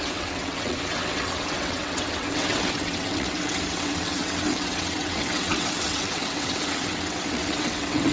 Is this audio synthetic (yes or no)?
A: yes